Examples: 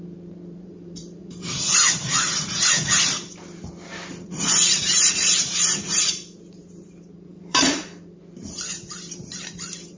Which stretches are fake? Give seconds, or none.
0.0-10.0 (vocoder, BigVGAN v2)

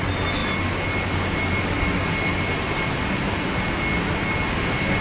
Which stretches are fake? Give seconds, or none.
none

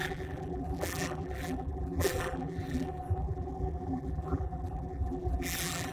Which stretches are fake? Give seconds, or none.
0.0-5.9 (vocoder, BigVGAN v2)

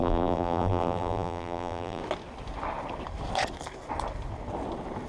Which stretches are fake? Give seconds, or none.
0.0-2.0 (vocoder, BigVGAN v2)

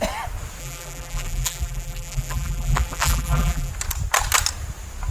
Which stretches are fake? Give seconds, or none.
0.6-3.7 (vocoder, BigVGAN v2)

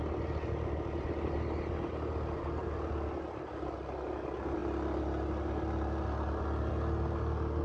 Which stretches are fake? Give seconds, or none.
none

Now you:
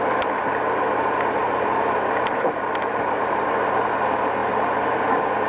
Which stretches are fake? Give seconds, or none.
1.4-3.8 (vocoder, BigVGAN v2)